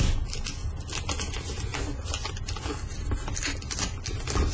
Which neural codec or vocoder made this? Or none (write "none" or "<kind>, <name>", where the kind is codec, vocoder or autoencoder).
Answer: none